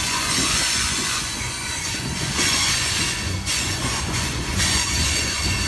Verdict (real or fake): fake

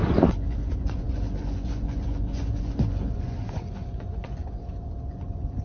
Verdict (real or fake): fake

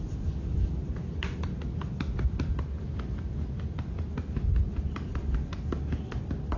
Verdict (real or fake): real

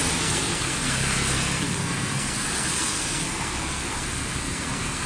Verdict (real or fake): fake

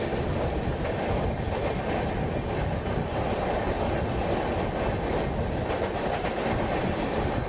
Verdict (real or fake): real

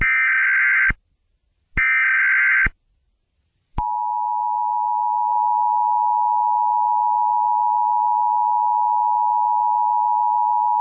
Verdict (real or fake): real